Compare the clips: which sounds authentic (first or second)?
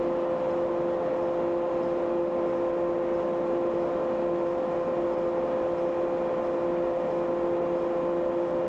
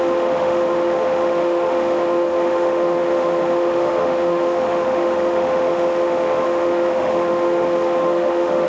first